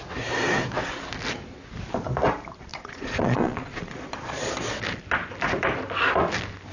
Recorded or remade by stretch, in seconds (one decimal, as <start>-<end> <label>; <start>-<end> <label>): 0.0-2.7 recorded; 2.7-4.5 remade; 4.5-6.7 recorded